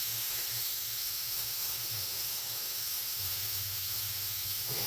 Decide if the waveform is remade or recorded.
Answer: remade